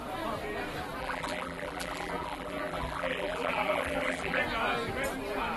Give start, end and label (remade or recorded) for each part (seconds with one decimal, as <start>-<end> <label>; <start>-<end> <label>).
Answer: 0.0-1.0 recorded; 1.0-4.4 remade; 4.4-5.6 recorded